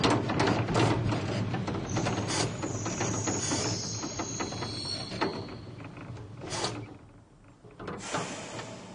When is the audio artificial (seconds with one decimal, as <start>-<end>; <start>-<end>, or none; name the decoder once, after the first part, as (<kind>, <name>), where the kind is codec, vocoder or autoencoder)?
none